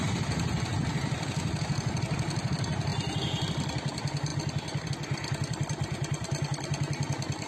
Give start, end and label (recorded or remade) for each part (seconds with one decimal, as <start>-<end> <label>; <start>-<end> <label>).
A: 0.0-7.5 recorded